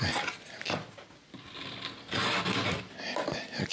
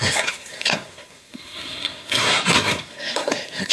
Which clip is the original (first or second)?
first